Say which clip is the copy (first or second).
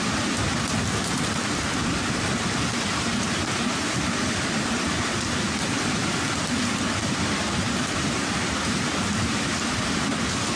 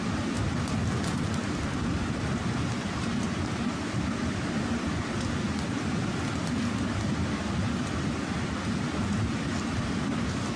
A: first